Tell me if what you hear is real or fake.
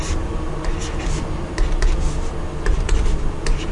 real